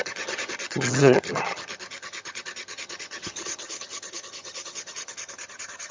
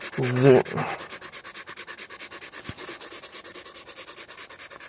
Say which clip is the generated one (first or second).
first